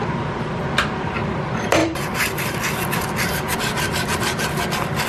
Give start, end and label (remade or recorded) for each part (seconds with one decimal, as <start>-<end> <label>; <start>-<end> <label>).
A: 0.0-1.8 recorded; 1.8-2.6 remade; 2.6-5.1 recorded